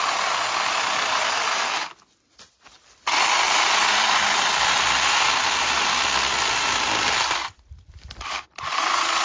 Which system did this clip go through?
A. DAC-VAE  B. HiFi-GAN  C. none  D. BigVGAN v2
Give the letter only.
C